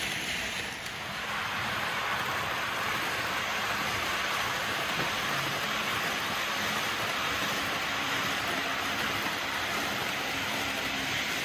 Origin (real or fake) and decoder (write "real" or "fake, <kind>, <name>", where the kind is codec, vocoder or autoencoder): fake, vocoder, BigVGAN v2